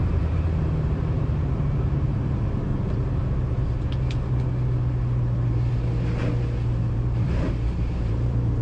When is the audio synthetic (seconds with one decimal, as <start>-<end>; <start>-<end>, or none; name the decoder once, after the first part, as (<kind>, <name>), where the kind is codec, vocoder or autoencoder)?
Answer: 0.0-2.7 (vocoder, BigVGAN v2); 6.9-8.6

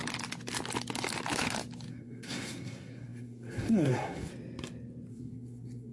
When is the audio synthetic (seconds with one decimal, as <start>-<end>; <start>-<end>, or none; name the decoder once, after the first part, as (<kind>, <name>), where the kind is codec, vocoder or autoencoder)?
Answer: 1.9-4.3 (codec, SNAC); 5.1-5.9

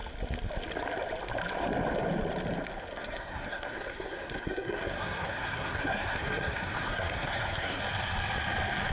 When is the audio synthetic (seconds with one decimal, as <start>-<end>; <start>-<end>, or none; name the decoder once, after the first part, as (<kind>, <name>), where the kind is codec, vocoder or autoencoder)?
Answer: 2.9-7.8 (codec, SNAC)